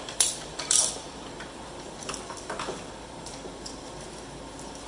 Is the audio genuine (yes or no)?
no